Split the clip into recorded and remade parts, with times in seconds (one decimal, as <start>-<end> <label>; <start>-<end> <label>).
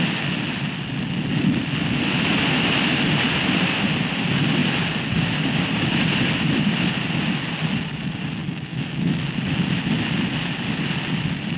0.0-8.4 recorded; 8.4-9.3 remade; 9.3-11.6 recorded